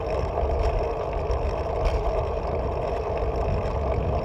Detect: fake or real real